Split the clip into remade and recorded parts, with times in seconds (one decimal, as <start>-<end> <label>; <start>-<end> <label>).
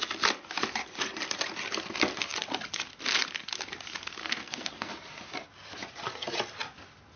0.0-4.2 recorded; 4.2-4.9 remade; 4.9-7.2 recorded